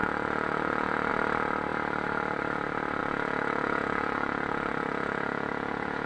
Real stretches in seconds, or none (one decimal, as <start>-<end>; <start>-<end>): 1.1-3.0